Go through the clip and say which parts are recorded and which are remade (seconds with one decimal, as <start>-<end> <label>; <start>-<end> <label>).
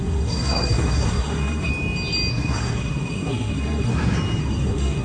0.0-1.7 remade; 1.7-2.3 recorded; 2.3-3.9 remade; 3.9-4.4 recorded; 4.4-5.0 remade